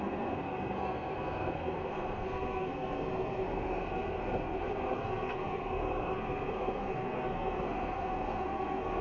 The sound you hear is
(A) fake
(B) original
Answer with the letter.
A